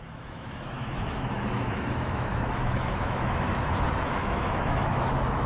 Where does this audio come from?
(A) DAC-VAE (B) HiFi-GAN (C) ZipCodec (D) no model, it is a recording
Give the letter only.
A